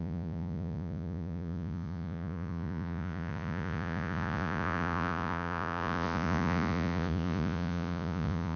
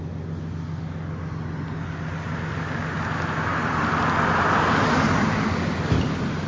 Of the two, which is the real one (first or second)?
second